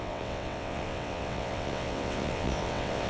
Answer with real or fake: fake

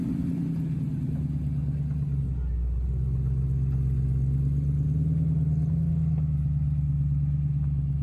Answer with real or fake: real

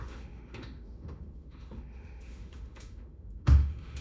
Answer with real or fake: fake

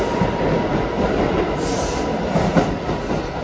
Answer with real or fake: real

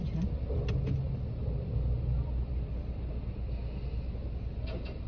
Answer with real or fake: real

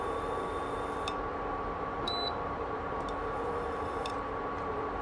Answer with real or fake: fake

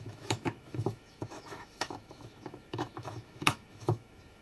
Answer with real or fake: fake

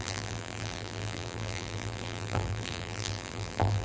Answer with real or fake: fake